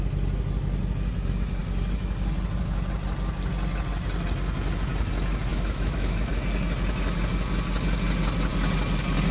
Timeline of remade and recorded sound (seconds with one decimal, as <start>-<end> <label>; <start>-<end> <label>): 0.0-5.5 recorded; 5.5-6.3 remade; 6.3-9.3 recorded